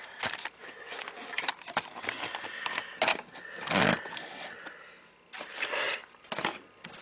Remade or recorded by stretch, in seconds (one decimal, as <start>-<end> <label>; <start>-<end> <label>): 0.0-0.6 recorded; 0.6-1.1 remade; 1.1-7.0 recorded